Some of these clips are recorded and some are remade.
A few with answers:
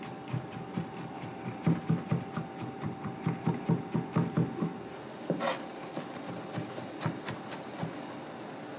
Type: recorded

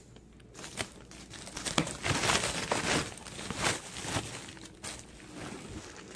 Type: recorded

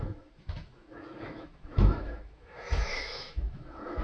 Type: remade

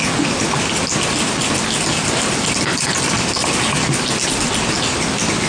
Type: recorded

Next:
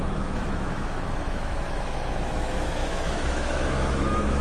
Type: remade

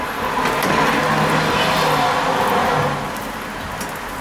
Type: recorded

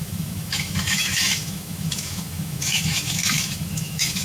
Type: remade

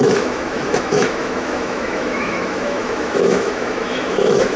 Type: remade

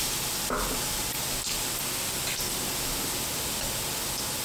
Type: recorded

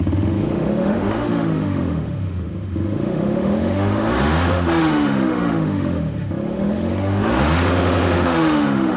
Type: remade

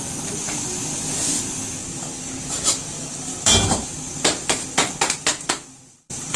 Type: recorded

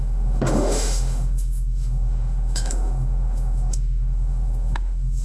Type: remade